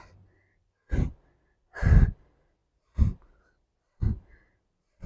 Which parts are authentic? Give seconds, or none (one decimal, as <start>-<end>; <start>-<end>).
0.0-5.1